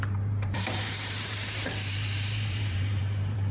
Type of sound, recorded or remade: remade